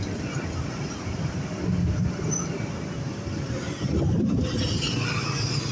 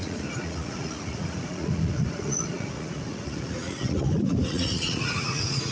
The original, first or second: first